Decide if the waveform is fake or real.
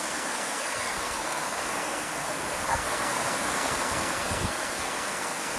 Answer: fake